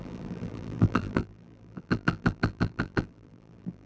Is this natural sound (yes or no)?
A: no